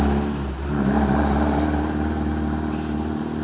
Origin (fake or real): real